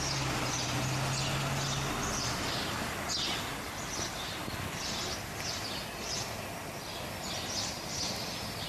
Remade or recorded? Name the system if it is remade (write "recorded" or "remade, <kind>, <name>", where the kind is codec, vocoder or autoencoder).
recorded